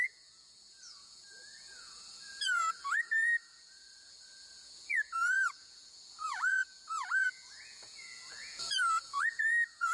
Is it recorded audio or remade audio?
remade